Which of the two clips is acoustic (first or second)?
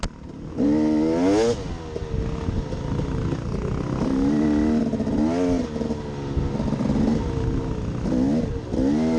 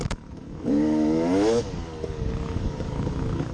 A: first